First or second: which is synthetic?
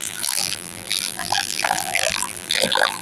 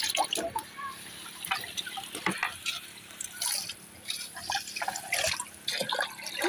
first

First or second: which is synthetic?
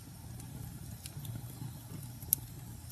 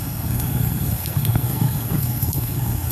second